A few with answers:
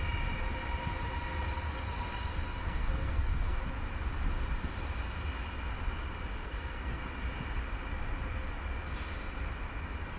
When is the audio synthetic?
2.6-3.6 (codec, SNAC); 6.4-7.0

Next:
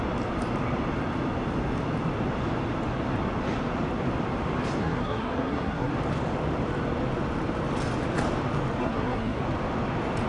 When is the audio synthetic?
4.8-5.9 (codec, SNAC); 8.8-9.4

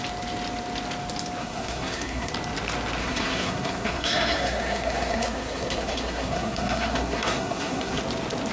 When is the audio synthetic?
1.4-2.3 (codec, SNAC); 3.0-8.0

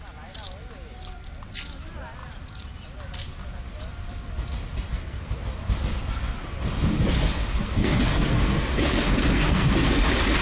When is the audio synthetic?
4.9-5.4 (codec, SNAC); 7.6-9.9

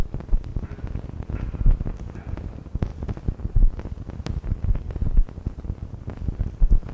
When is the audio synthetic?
none

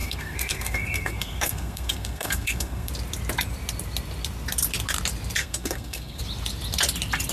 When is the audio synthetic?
0.0-2.9 (codec, SNAC); 5.4-6.2

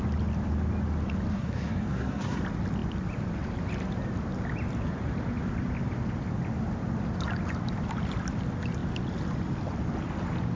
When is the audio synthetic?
1.3-2.4 (codec, SNAC)

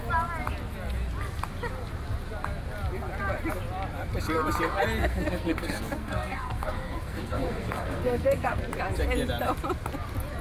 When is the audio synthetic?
5.0-8.6 (codec, SNAC)